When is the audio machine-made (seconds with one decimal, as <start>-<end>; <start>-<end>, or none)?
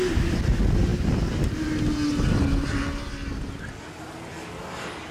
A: none